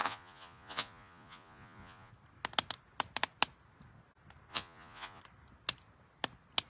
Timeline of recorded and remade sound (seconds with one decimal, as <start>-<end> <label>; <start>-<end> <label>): 0.0-2.1 remade; 2.1-4.5 recorded; 4.5-5.2 remade; 5.2-6.7 recorded